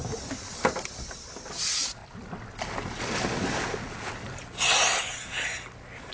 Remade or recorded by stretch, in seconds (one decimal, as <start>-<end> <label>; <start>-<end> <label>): 0.0-6.1 recorded